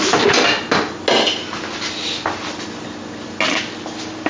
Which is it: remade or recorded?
recorded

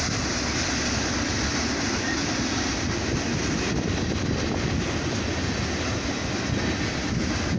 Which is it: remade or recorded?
recorded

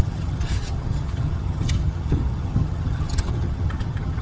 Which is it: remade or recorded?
remade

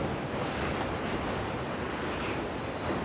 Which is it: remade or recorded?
recorded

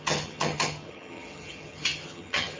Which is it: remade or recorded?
remade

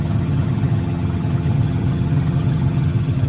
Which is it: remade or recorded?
remade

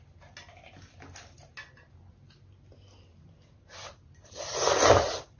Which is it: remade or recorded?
recorded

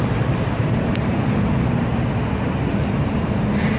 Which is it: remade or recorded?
recorded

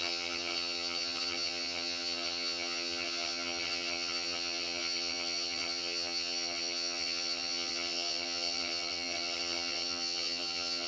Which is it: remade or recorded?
remade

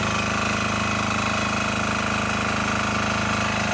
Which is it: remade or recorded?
recorded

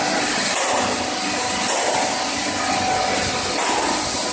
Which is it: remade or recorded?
recorded